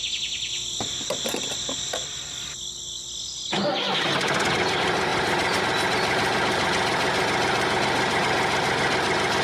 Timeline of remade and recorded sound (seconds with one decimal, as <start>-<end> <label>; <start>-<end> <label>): 0.0-5.1 recorded; 5.1-5.6 remade; 5.6-9.4 recorded